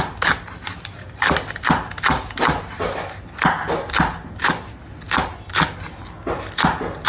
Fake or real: real